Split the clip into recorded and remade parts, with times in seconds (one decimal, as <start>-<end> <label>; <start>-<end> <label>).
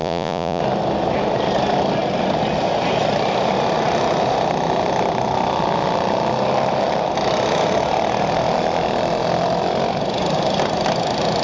0.0-0.6 remade; 0.6-11.4 recorded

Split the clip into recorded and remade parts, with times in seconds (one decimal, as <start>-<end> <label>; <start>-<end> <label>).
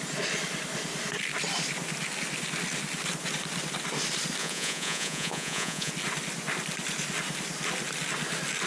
0.0-4.4 recorded; 4.4-5.9 remade; 5.9-8.7 recorded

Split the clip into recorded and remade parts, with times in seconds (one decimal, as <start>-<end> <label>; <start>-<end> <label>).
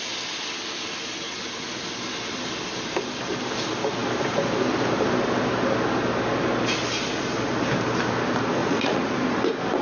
0.0-8.6 recorded; 8.6-9.1 remade; 9.1-9.8 recorded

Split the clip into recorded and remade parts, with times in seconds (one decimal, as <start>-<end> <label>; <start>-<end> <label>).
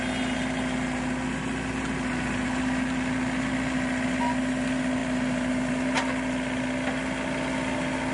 0.0-8.1 recorded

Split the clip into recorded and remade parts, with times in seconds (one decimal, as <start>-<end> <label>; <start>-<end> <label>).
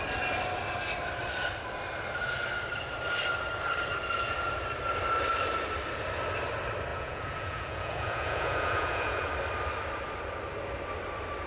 0.0-6.9 recorded; 6.9-9.3 remade; 9.3-11.5 recorded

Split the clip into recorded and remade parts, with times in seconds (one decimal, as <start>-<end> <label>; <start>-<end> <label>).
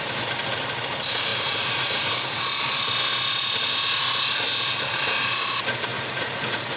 0.0-1.3 recorded; 1.3-2.1 remade; 2.1-5.9 recorded; 5.9-6.8 remade